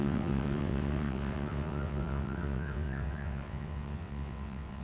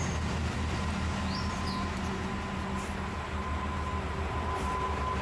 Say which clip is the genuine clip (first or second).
second